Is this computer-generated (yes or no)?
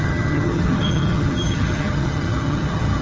yes